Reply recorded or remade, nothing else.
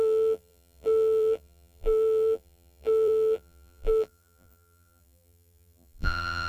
remade